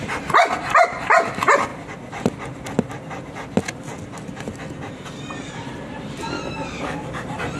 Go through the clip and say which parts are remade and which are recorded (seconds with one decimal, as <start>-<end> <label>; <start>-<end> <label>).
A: 0.0-7.6 recorded